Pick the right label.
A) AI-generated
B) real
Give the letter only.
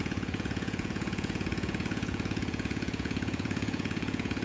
A